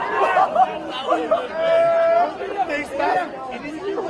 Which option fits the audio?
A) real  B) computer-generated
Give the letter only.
A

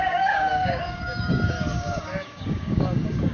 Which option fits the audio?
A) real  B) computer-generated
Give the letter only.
B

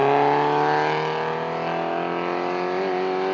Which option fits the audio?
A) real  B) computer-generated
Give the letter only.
A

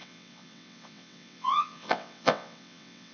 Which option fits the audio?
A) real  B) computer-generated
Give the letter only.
B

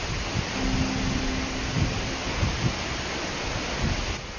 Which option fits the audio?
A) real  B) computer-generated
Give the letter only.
A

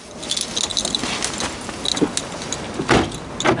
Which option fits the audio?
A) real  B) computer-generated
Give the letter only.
A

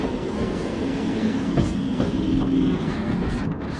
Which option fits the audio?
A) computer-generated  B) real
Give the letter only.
A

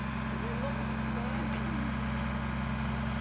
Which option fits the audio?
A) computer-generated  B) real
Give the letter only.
B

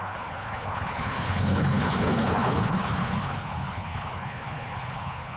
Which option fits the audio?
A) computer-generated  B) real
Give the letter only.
A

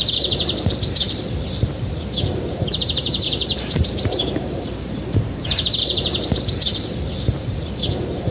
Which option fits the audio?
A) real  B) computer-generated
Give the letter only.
B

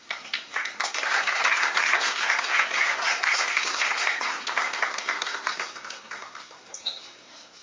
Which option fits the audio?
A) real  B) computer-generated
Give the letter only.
B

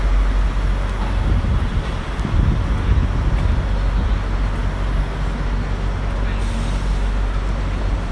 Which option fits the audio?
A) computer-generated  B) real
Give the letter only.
B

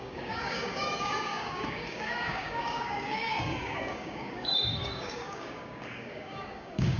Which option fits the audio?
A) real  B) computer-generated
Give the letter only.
B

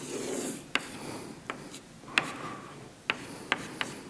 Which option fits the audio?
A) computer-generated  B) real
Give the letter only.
B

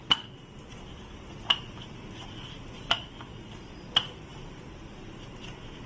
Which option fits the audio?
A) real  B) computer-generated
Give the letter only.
A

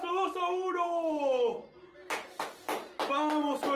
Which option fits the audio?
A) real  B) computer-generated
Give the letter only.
A